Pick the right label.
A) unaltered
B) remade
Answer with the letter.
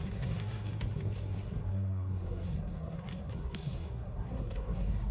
B